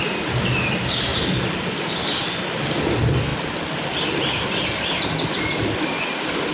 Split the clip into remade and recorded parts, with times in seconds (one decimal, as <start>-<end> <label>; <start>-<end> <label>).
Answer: 0.0-6.5 recorded